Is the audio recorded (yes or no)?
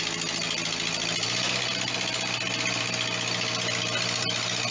yes